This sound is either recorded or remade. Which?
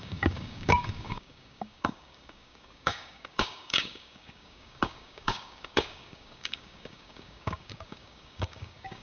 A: remade